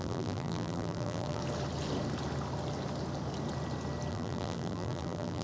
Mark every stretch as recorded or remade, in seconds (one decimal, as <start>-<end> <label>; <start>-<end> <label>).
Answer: 0.0-1.4 remade; 1.4-4.1 recorded; 4.1-5.4 remade